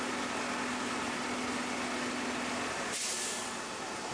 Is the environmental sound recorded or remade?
recorded